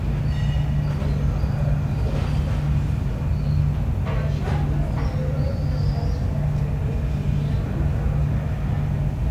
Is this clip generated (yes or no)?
no